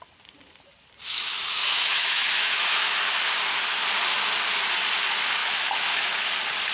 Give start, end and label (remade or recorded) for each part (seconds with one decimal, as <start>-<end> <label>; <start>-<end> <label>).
0.0-1.1 recorded; 1.1-3.0 remade; 3.0-5.4 recorded; 5.4-6.3 remade; 6.3-6.7 recorded